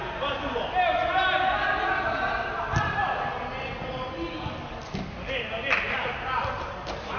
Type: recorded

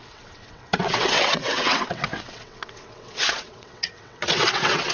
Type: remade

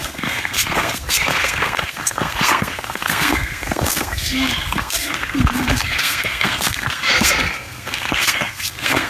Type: remade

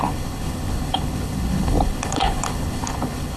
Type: remade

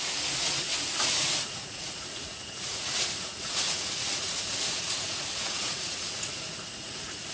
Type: remade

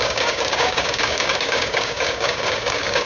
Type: remade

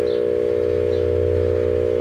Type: recorded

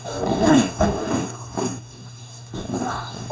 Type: remade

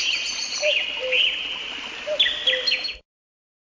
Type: recorded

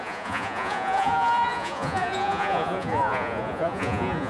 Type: remade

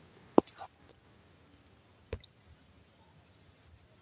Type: recorded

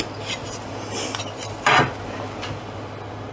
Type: recorded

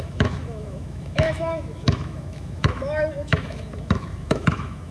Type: remade